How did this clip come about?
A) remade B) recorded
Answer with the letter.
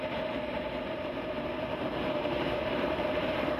A